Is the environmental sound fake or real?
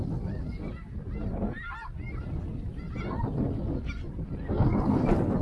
real